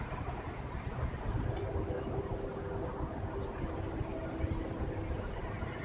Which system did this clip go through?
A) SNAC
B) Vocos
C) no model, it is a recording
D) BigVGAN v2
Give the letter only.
C